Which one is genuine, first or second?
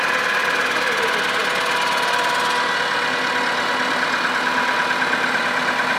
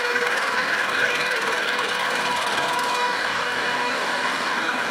first